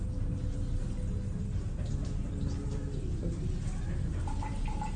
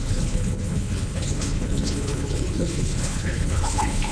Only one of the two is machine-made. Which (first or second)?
second